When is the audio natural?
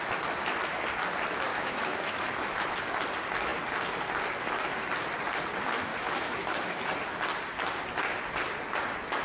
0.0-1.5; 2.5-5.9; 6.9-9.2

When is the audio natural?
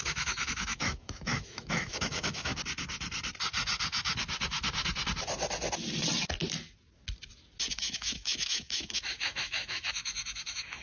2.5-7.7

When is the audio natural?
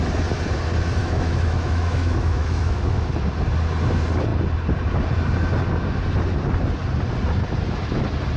0.0-1.0; 3.1-8.4